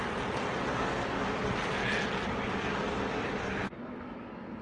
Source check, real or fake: real